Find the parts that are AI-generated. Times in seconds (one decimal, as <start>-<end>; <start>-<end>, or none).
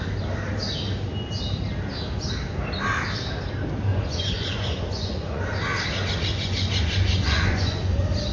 3.9-5.4; 6.3-7.9